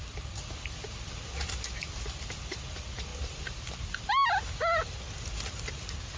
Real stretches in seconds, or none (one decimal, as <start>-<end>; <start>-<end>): 0.0-6.2